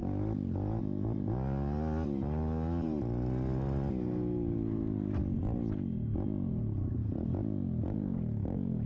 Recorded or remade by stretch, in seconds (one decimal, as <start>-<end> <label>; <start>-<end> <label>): 0.0-8.9 recorded